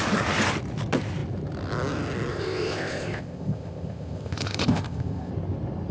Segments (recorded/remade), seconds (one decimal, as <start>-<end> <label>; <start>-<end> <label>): 0.0-2.3 recorded; 2.3-5.3 remade; 5.3-5.9 recorded

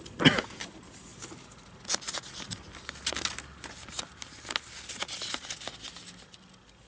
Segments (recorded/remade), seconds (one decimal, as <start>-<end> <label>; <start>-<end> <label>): 0.0-6.9 recorded

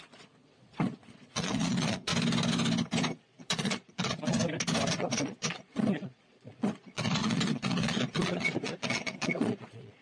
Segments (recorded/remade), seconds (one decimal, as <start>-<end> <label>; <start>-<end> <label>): 0.0-2.1 remade; 2.1-3.2 recorded; 3.2-4.4 remade; 4.4-4.9 recorded; 4.9-10.0 remade

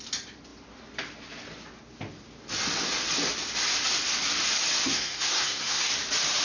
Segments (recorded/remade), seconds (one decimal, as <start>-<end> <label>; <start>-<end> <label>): 0.0-4.9 recorded; 4.9-5.9 remade; 5.9-6.4 recorded

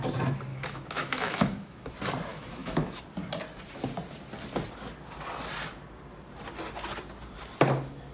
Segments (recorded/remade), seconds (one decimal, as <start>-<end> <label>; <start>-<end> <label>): 0.0-0.5 recorded; 0.5-1.9 remade; 1.9-2.3 recorded; 2.3-3.0 remade; 3.0-8.1 recorded